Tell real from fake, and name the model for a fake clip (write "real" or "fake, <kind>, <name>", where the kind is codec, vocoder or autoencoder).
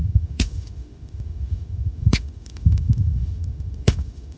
fake, autoencoder, DAC-VAE